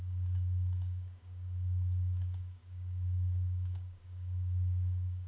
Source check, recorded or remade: remade